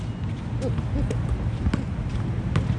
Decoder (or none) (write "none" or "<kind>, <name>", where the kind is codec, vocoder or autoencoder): none